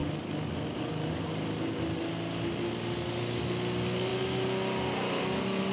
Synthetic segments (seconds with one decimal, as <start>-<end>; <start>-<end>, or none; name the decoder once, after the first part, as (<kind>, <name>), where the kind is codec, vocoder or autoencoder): none